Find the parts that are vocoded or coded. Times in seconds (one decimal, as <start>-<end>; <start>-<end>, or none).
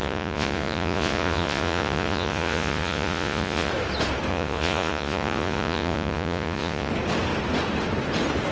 0.0-3.7; 4.3-6.9